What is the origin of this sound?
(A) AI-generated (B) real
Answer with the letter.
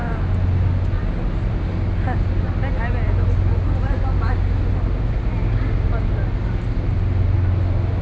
B